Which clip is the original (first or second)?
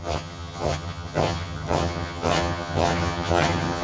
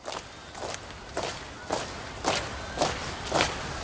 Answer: second